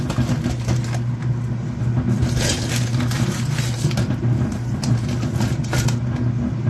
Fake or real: real